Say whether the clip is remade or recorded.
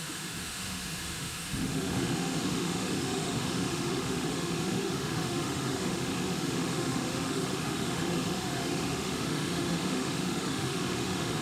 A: remade